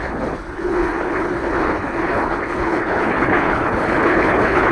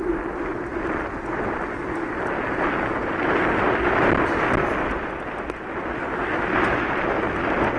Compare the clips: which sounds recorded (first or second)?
second